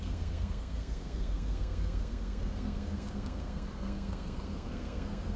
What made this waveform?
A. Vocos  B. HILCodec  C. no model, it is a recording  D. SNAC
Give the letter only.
D